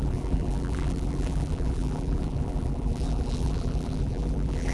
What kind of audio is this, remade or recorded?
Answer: remade